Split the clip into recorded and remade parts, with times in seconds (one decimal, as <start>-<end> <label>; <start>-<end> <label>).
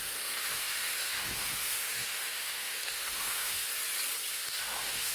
0.0-3.7 remade; 3.7-4.3 recorded; 4.3-5.1 remade